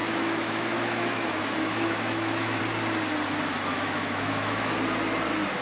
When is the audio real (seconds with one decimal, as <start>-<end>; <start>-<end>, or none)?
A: 2.6-3.7; 4.7-5.6